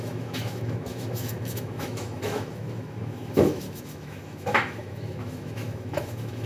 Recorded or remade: remade